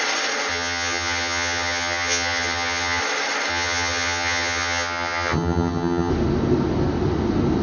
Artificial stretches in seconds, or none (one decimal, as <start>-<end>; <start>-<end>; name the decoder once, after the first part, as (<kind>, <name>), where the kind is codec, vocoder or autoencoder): 0.5-3.0 (vocoder, HiFi-GAN); 3.5-6.1